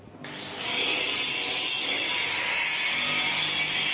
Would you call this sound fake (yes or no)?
no